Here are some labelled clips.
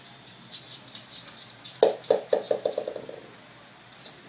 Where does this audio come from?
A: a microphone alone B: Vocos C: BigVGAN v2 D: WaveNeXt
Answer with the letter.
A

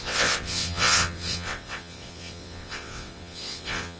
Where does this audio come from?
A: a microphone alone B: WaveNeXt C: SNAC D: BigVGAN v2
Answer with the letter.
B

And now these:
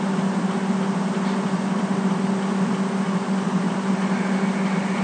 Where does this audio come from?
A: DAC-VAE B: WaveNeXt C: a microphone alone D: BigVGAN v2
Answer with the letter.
C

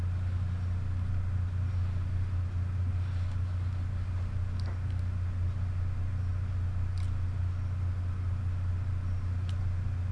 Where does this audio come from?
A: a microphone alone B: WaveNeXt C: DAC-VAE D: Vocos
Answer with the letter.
A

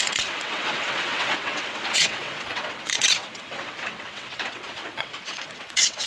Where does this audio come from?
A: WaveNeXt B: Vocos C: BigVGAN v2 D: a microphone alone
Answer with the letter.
A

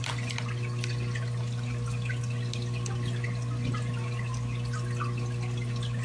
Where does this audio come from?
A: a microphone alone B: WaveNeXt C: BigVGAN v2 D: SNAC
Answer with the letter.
A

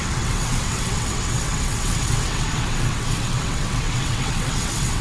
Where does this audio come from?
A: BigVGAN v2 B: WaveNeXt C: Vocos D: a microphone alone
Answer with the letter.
B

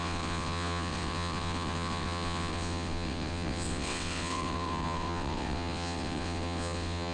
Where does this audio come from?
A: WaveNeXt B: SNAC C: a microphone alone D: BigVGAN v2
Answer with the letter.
A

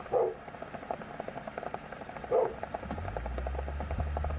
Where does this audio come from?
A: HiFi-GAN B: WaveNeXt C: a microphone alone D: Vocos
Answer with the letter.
C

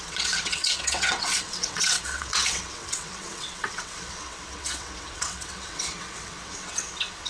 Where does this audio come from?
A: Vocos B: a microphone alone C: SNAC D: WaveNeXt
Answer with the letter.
D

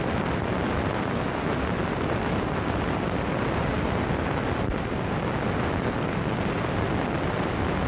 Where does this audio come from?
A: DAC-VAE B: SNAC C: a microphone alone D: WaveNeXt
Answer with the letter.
C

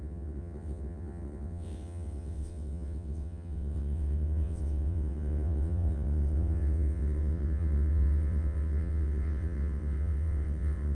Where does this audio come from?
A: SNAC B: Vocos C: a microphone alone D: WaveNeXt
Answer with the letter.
D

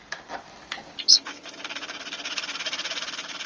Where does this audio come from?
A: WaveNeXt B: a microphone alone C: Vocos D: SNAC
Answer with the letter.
B